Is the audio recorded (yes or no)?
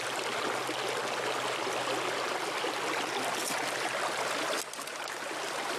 yes